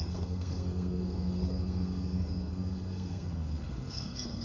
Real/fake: fake